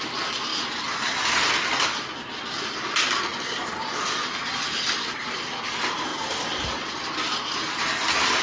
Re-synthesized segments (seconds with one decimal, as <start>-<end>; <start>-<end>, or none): none